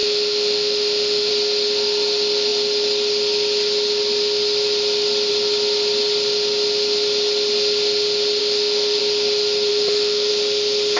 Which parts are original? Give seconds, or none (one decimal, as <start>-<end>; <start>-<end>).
1.3-8.4; 9.0-9.7; 10.3-11.0

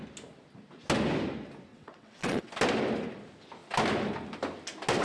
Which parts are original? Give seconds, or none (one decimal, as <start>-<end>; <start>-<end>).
0.0-1.7; 2.5-5.0

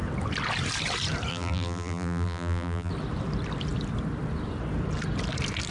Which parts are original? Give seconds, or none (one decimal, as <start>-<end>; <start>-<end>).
0.0-1.3; 2.9-5.7

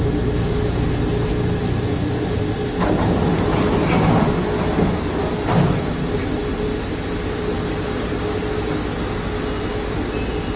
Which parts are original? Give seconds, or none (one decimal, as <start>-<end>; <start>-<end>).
0.0-10.6

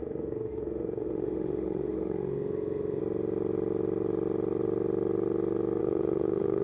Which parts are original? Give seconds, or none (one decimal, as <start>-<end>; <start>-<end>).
3.0-5.8